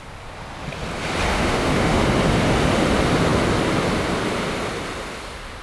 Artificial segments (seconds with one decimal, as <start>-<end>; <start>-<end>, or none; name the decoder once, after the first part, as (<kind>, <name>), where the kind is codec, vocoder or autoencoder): 1.3-2.1 (autoencoder, DAC-VAE)